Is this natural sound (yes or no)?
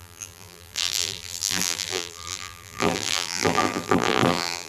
no